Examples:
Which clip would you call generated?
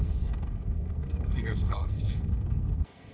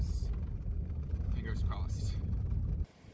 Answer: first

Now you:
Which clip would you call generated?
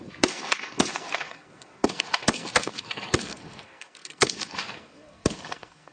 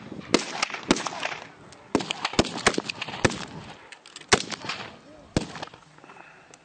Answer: first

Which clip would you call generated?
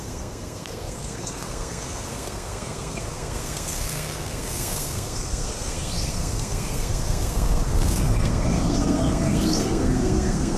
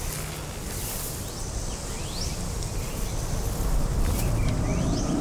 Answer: first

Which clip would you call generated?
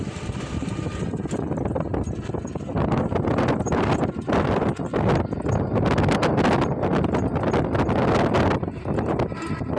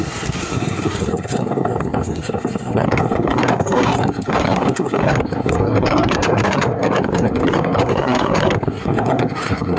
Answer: second